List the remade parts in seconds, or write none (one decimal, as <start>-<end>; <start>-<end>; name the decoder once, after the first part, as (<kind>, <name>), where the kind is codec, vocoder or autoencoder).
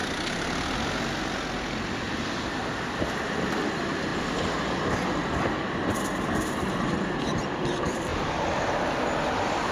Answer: 1.6-4.1 (vocoder, BigVGAN v2); 7.2-8.1; 8.8-9.7